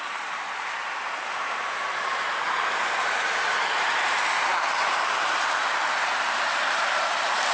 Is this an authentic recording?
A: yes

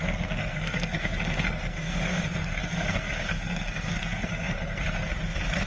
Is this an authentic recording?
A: no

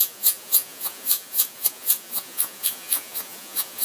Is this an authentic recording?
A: no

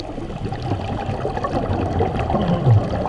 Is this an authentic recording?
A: yes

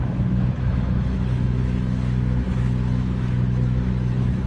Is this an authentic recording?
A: no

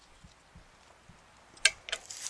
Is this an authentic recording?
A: yes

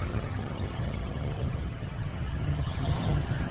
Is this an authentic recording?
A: no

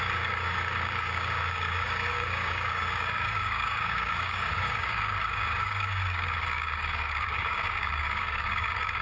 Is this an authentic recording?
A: no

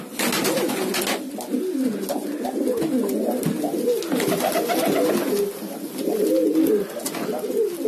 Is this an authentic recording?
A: yes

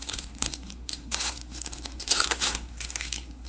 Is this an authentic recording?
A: no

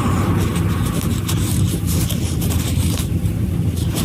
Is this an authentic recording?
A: yes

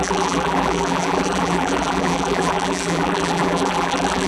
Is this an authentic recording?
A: no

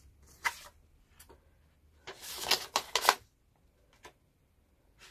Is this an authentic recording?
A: yes